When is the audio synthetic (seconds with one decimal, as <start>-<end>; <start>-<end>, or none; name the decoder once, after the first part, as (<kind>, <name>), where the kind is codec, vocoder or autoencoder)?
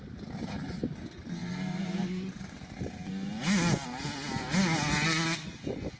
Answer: 1.4-2.8 (vocoder, BigVGAN v2)